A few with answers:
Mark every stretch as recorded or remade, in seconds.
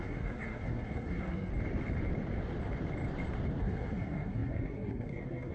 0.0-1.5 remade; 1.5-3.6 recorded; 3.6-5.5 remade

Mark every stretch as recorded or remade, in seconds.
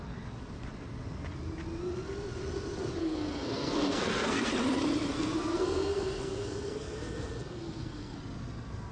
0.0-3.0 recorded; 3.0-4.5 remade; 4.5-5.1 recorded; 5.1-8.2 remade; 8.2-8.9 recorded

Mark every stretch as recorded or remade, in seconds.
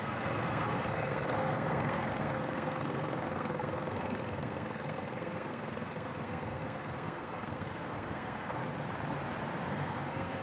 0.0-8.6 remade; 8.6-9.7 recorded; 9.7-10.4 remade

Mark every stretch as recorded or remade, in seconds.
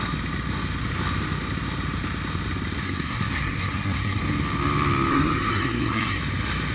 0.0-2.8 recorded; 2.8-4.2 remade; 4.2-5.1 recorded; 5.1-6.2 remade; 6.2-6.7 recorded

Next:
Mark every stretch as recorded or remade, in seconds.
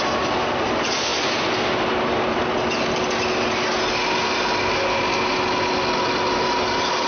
0.0-7.1 recorded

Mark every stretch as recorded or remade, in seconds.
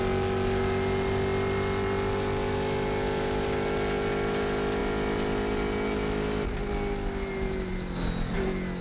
0.0-8.8 recorded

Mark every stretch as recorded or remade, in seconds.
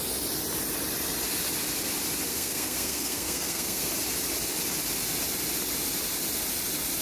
0.0-2.3 recorded; 2.3-3.9 remade; 3.9-7.0 recorded